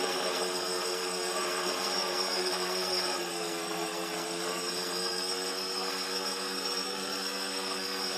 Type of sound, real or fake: fake